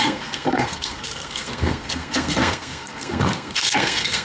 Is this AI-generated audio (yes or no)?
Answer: yes